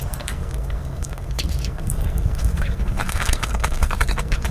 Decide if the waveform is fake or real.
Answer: fake